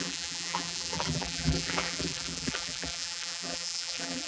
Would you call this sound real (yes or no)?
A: no